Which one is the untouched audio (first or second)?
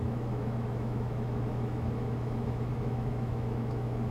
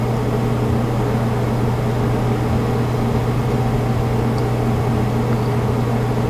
second